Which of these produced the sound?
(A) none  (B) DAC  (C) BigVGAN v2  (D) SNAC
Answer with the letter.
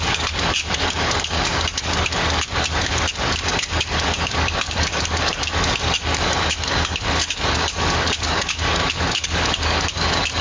B